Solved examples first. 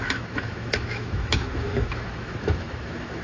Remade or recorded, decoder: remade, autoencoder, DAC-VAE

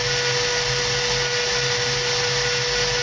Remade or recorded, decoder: recorded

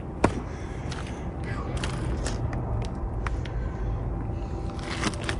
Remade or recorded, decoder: recorded